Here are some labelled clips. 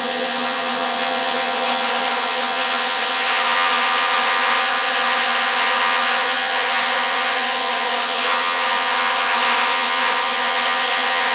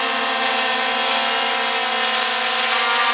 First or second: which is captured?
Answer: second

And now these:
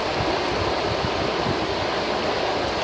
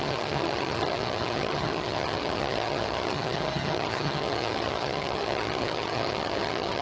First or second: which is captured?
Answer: first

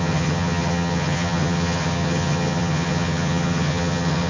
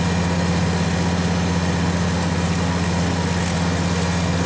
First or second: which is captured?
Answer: second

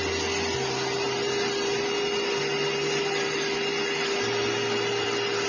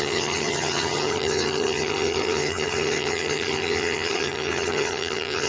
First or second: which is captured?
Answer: first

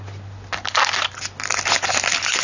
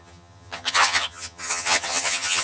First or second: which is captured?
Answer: first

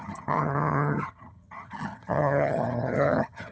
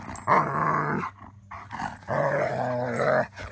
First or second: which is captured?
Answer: second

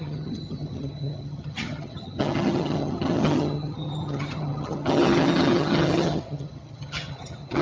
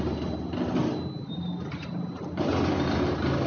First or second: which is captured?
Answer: second